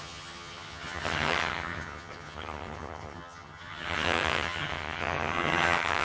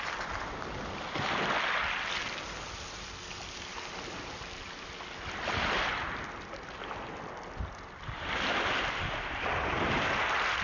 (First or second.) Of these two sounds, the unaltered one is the second